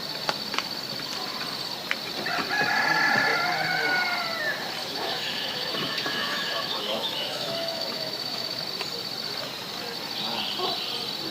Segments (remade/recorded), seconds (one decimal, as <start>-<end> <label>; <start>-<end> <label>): 0.0-4.8 recorded; 4.8-8.6 remade; 8.6-11.3 recorded